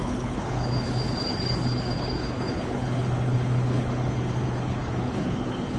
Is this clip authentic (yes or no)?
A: no